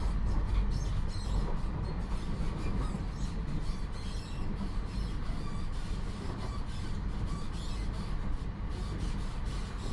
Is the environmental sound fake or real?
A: real